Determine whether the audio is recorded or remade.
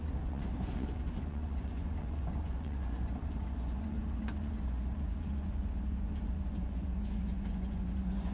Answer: remade